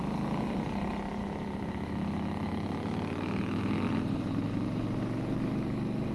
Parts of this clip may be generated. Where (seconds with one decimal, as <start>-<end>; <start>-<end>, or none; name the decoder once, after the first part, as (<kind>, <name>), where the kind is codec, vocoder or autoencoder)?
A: 1.2-3.9 (autoencoder, DAC-VAE)